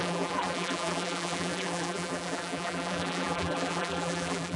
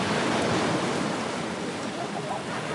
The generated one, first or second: first